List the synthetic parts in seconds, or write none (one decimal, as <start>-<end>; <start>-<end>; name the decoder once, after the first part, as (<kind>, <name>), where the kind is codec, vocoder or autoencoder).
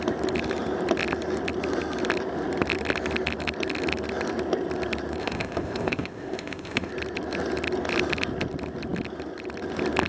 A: 5.2-6.9 (codec, ZipCodec)